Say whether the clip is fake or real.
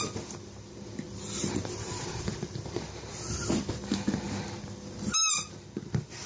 fake